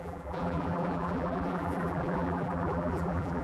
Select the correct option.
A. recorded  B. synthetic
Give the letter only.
B